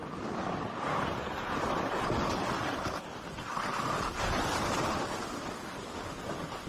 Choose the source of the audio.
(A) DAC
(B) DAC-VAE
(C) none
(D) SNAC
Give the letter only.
C